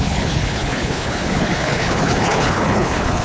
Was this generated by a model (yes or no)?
yes